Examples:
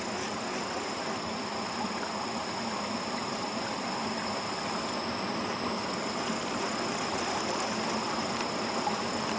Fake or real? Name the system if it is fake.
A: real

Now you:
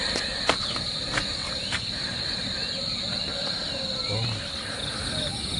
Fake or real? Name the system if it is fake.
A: real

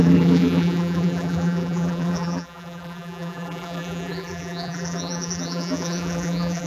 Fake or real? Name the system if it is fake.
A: fake, vocoder, BigVGAN v2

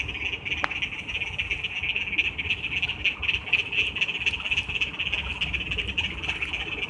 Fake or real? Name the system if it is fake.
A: real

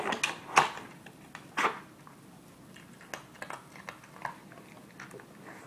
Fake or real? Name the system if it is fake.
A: real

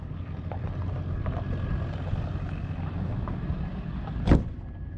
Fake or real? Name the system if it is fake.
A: real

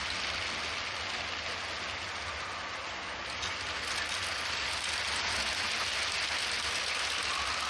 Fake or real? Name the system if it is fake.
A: real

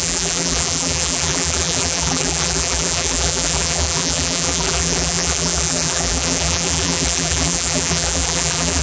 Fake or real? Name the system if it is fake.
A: fake, vocoder, BigVGAN v2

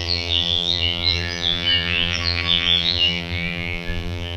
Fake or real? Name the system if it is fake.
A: fake, vocoder, BigVGAN v2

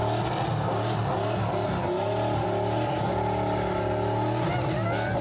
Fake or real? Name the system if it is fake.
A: real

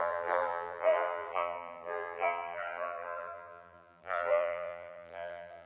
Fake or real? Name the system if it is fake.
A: fake, vocoder, BigVGAN v2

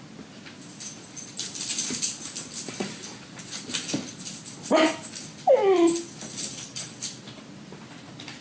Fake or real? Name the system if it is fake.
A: real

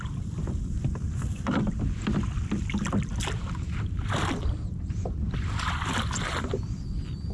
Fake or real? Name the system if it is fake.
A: fake, vocoder, BigVGAN v2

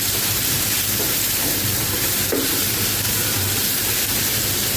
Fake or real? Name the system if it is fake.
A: fake, vocoder, BigVGAN v2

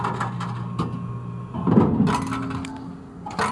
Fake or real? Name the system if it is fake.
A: real